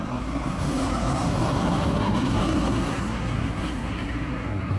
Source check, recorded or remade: remade